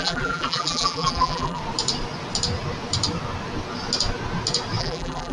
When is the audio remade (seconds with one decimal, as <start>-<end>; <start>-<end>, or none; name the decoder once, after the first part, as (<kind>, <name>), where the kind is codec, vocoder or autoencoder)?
0.0-1.6 (vocoder, BigVGAN v2); 4.8-5.3